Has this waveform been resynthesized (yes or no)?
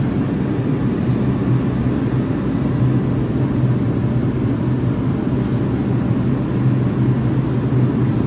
no